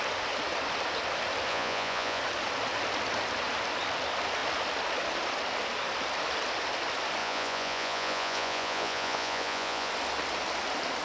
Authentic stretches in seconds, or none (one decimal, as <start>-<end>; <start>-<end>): 0.0-1.5; 2.2-7.2; 9.9-11.0